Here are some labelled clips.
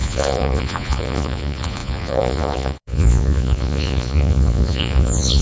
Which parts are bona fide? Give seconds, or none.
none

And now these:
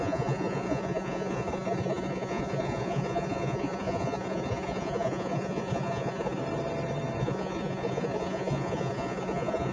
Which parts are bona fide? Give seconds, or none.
6.4-7.2

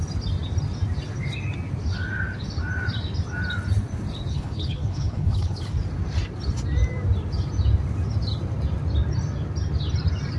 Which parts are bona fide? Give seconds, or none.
0.0-4.3; 5.7-10.4

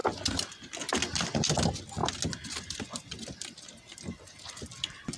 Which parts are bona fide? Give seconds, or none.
0.0-5.2

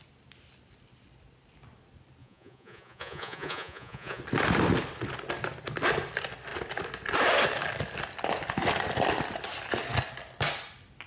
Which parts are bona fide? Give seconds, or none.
0.0-2.2; 4.2-11.1

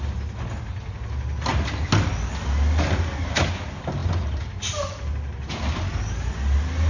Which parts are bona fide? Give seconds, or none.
0.0-6.9

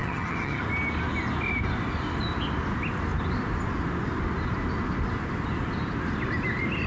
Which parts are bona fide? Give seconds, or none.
0.6-6.9